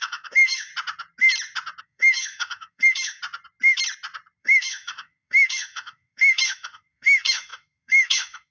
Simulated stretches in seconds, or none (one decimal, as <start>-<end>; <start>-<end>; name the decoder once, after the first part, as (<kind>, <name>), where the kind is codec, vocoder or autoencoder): 0.0-0.7 (autoencoder, DAC-VAE); 1.8-3.2; 4.4-8.5

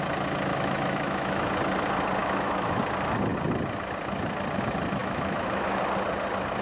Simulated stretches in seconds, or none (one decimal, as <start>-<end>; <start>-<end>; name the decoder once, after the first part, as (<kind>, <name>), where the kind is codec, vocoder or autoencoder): 0.5-1.5 (autoencoder, DAC-VAE); 2.2-2.8; 5.0-5.8

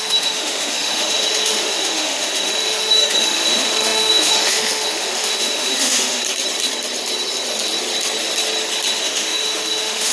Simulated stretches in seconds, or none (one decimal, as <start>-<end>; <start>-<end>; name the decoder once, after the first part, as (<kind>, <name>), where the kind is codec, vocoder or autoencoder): 0.0-6.2 (autoencoder, DAC-VAE); 9.0-10.1